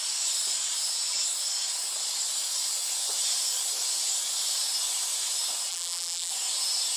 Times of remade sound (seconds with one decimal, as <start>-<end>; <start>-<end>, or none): 5.7-6.3